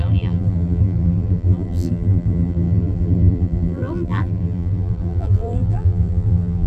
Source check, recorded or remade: remade